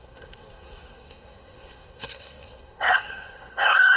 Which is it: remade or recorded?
remade